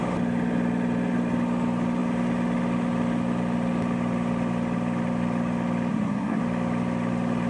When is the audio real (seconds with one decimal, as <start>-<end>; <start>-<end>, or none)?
0.0-5.9; 6.4-7.5

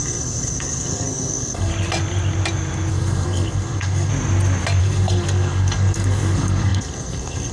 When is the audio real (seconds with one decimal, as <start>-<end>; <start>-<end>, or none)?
1.7-2.9; 4.1-4.8

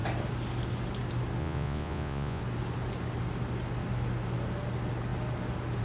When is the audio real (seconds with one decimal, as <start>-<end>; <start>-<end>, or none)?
0.0-1.4; 2.4-5.8

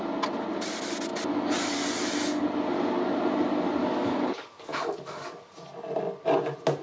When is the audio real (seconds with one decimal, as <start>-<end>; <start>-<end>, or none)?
0.0-3.8; 5.5-6.8